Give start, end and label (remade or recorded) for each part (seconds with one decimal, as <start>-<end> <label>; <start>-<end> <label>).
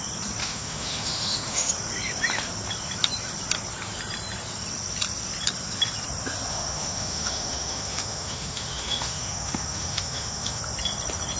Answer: 0.0-0.4 recorded; 0.4-1.7 remade; 1.7-6.5 recorded; 6.5-10.6 remade; 10.6-11.4 recorded